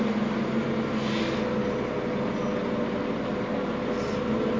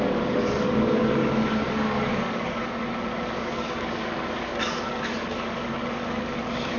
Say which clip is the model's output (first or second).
second